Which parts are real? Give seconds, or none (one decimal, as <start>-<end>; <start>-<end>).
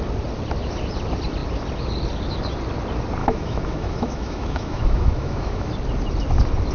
0.0-3.2; 5.7-6.7